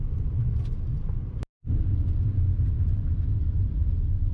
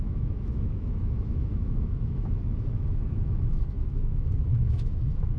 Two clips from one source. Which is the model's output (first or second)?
second